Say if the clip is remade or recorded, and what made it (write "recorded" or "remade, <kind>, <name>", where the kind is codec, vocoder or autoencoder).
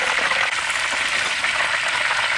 recorded